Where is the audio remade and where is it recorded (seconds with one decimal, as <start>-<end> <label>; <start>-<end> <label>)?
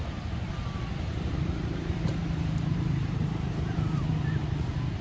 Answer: 0.0-1.1 recorded; 1.1-4.1 remade; 4.1-5.0 recorded